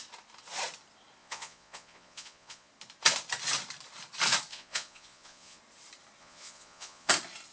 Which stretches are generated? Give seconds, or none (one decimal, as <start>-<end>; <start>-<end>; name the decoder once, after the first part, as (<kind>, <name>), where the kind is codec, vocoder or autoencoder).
1.2-2.7 (vocoder, Vocos); 4.5-5.6; 6.2-7.1